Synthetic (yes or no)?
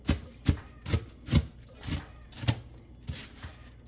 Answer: no